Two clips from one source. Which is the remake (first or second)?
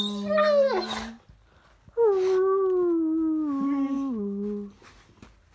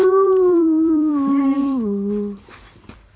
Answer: second